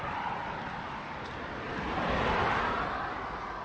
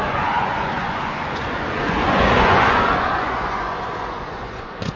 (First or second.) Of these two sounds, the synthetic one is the second